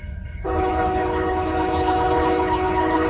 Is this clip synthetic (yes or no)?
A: yes